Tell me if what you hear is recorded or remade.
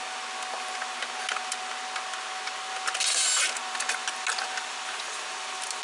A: recorded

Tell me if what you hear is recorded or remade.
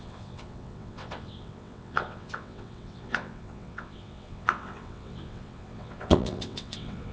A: remade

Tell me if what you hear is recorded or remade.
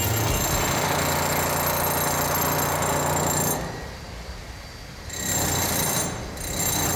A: recorded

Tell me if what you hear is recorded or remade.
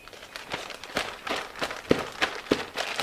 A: recorded